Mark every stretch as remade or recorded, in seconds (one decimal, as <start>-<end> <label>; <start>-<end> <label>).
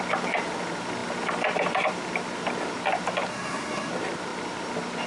0.0-3.3 recorded; 3.3-3.9 remade; 3.9-5.1 recorded